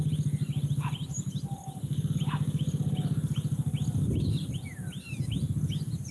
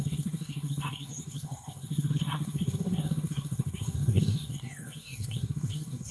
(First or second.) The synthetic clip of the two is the second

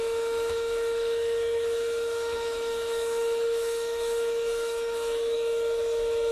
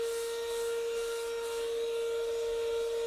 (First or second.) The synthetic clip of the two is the first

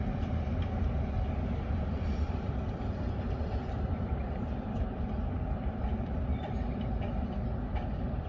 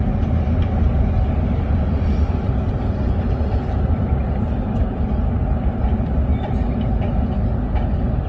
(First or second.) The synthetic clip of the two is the first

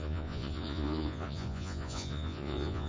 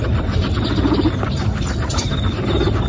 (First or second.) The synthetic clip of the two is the first